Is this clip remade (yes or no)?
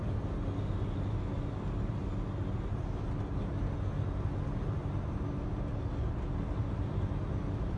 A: no